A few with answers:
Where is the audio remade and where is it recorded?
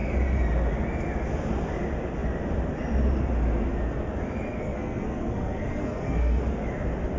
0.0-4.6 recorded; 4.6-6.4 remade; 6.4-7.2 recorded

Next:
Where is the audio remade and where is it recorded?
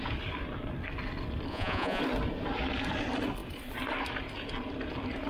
0.0-1.5 recorded; 1.5-2.0 remade; 2.0-5.3 recorded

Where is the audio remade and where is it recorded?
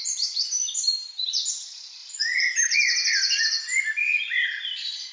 0.0-1.5 remade; 1.5-2.0 recorded; 2.0-3.4 remade; 3.4-4.0 recorded; 4.0-5.1 remade